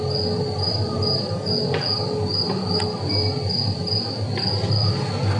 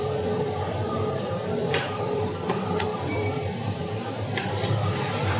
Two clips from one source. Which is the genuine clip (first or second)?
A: first